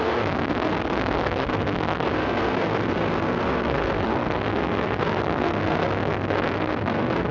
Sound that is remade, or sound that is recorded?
remade